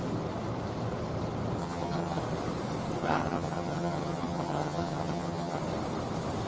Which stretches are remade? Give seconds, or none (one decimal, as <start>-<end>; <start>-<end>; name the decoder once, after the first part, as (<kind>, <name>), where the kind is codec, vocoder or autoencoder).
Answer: 1.6-2.2 (vocoder, HiFi-GAN); 3.0-5.6

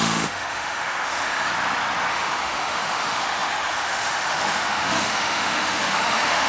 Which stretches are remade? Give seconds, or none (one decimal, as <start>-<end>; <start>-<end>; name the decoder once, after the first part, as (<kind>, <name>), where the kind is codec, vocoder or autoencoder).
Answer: 0.0-1.5 (autoencoder, DAC-VAE); 2.1-6.5

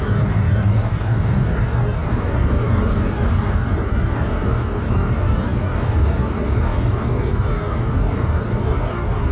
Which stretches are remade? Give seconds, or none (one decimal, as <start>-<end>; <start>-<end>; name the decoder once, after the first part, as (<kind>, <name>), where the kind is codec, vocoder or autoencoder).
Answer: 0.0-9.3 (codec, DAC)

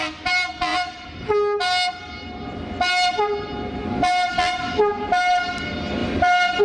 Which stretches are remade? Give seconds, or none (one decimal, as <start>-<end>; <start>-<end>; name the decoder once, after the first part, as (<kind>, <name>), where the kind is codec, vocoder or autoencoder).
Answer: none

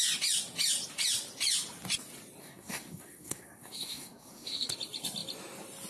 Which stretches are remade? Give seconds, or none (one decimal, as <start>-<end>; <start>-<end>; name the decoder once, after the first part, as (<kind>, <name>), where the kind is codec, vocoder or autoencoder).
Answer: 2.4-4.7 (codec, SNAC)